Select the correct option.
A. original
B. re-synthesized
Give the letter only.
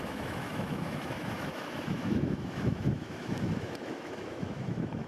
B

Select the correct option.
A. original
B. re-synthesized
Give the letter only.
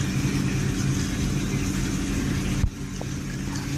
A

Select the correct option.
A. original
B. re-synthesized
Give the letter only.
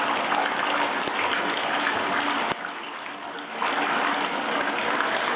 A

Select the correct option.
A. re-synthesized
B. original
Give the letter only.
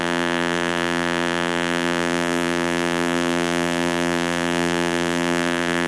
A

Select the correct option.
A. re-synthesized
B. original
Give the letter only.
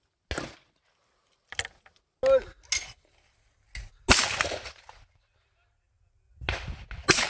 B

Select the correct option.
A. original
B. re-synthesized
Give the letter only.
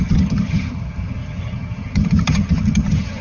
B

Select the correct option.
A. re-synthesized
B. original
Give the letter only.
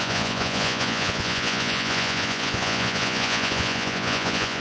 A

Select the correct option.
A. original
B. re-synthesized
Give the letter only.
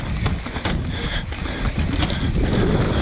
A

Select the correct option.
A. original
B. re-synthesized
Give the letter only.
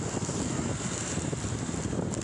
A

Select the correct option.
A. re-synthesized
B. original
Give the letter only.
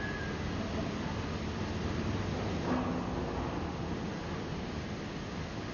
B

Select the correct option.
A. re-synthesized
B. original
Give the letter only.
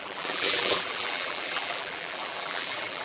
A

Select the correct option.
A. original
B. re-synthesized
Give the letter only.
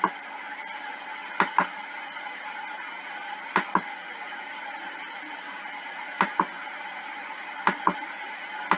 A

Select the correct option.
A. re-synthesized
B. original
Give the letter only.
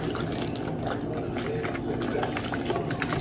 B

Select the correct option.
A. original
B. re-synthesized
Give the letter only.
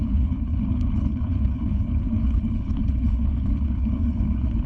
B